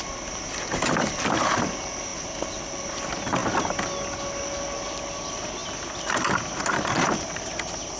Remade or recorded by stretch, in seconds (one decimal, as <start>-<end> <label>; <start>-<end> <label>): 0.0-8.0 recorded